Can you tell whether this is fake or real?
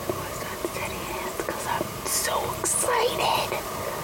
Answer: real